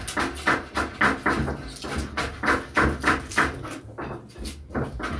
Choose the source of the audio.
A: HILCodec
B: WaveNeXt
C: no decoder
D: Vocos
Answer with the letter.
C